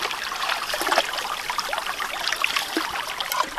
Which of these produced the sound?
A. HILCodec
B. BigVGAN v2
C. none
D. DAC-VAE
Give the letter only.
C